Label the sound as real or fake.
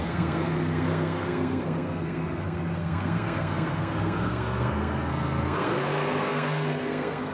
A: fake